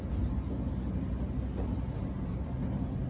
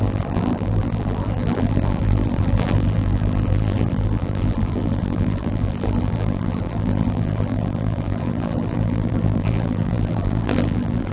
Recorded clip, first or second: first